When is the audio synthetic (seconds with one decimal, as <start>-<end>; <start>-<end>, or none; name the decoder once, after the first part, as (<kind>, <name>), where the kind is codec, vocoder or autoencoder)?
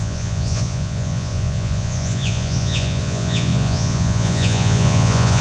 0.0-5.4 (vocoder, Vocos)